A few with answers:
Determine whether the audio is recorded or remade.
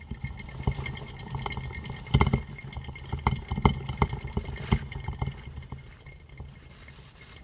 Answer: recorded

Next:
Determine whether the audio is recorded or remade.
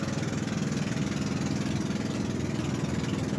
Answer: recorded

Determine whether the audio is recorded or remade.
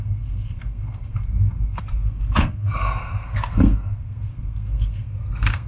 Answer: remade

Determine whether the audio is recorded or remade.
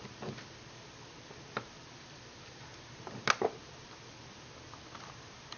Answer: recorded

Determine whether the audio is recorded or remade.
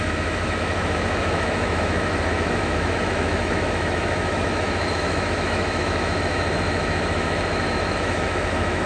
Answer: remade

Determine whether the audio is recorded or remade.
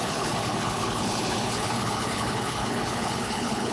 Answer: remade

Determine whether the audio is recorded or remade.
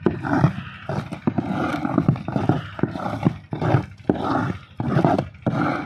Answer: recorded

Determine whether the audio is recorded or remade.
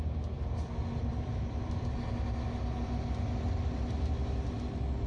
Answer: recorded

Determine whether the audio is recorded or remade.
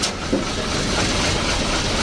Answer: recorded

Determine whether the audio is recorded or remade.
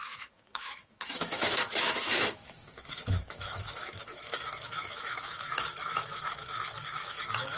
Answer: remade